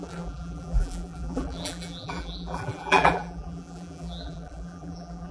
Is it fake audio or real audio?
fake